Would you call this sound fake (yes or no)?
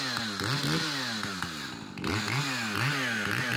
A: no